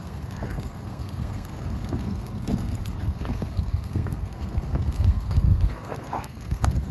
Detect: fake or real fake